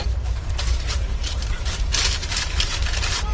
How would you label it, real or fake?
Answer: fake